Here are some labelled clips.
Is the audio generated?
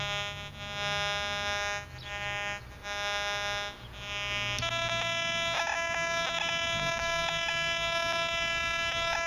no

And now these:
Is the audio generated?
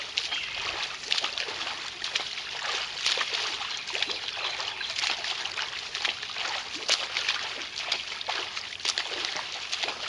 no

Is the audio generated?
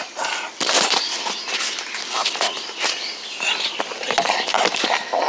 no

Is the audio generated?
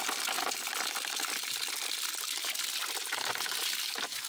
no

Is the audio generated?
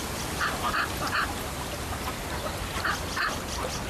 no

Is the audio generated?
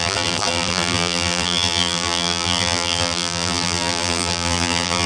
yes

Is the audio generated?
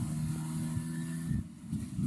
no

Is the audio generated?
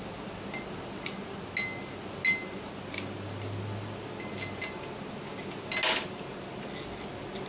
no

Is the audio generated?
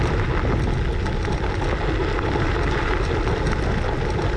no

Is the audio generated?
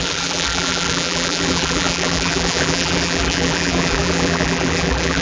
yes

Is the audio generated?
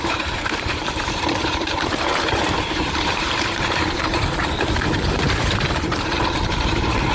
yes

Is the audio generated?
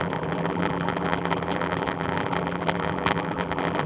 yes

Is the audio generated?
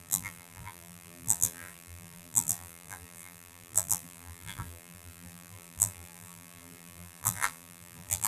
yes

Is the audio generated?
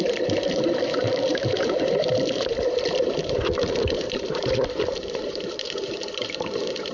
yes